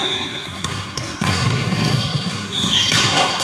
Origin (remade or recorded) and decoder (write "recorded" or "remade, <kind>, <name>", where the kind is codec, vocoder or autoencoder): remade, codec, SNAC